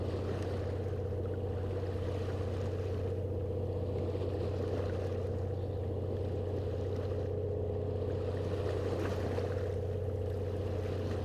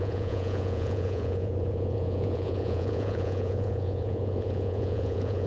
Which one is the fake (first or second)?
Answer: second